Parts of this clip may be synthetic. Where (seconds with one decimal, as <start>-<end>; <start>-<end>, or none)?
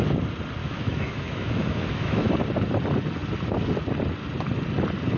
0.6-2.3